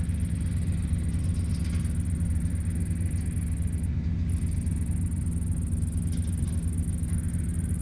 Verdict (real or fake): real